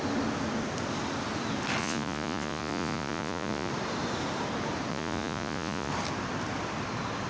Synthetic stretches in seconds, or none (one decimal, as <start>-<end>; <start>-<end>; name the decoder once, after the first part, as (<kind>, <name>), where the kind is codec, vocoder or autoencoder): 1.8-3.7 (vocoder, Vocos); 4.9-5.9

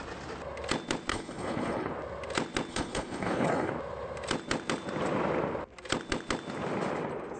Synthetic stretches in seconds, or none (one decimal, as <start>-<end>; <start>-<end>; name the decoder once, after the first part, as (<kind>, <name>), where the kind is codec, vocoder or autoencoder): 1.1-1.9 (codec, HILCodec); 2.7-3.7

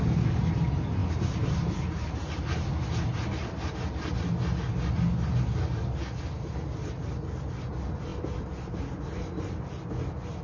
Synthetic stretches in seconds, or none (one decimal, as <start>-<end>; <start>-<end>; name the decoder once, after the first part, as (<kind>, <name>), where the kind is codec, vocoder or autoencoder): none

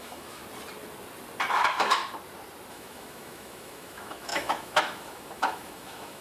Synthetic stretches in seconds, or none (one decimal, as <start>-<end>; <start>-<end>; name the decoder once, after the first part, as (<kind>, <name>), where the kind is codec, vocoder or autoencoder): 0.0-0.4 (autoencoder, DAC-VAE); 1.5-2.0; 2.7-6.2

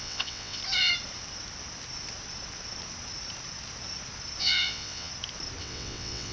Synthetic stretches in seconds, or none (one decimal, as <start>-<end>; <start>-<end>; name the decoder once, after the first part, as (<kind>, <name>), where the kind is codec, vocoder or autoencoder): 0.0-0.6 (vocoder, WaveNeXt); 4.4-5.1; 5.6-6.3

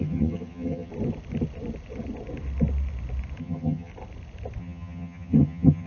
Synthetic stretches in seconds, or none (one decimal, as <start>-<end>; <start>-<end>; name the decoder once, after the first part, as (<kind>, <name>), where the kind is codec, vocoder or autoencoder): 0.0-0.9 (vocoder, HiFi-GAN); 3.4-3.9; 4.6-5.9